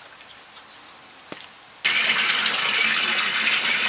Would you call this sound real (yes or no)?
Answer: yes